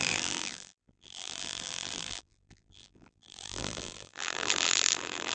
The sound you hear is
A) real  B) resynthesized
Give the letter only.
B